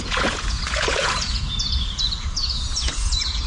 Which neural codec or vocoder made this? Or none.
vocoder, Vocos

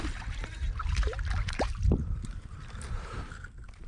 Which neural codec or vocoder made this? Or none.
vocoder, BigVGAN v2